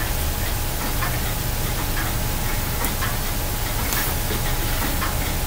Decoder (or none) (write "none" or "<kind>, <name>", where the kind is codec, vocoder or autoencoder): none